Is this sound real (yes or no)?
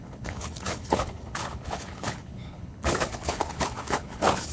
no